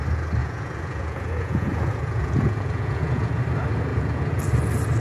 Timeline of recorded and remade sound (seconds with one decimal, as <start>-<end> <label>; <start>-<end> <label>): 0.0-0.4 recorded; 0.4-3.4 remade; 3.4-3.9 recorded; 3.9-4.4 remade; 4.4-5.0 recorded